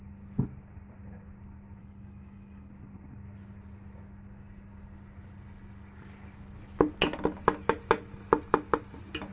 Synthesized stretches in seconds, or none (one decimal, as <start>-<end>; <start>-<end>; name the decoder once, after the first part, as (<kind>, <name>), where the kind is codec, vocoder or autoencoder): 1.8-2.7 (codec, HILCodec)